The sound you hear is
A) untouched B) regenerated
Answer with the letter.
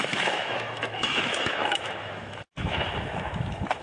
B